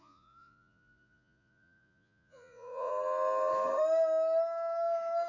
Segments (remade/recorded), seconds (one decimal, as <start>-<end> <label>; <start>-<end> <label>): 0.0-2.9 remade; 2.9-5.3 recorded